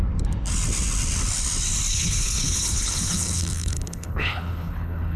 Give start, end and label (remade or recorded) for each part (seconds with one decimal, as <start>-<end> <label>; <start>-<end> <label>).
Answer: 0.0-1.9 recorded; 1.9-5.2 remade